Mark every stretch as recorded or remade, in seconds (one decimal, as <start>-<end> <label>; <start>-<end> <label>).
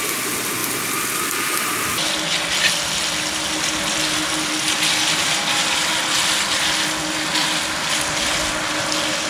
0.0-9.3 recorded